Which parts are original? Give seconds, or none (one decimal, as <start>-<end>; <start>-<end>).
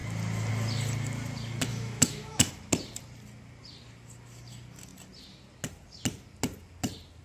0.0-1.7; 2.5-7.2